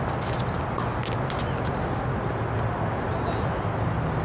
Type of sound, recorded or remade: recorded